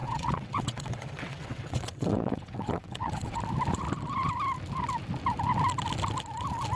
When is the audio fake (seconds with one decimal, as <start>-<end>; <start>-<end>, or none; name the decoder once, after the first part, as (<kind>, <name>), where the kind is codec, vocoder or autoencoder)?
0.0-3.4 (vocoder, WaveNeXt)